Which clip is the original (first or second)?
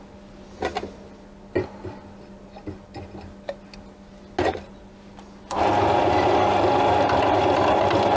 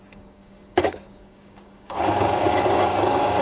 first